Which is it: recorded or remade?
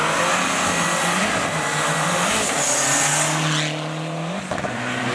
recorded